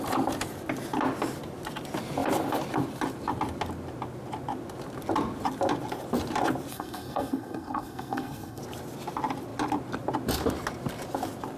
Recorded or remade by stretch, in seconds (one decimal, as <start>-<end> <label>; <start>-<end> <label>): 0.0-6.7 recorded; 6.7-8.6 remade; 8.6-11.6 recorded